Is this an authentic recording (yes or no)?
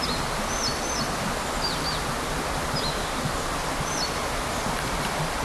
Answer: yes